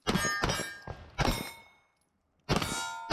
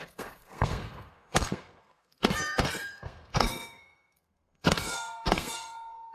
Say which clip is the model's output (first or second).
second